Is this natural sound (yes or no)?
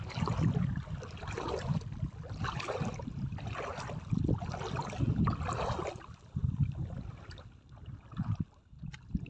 yes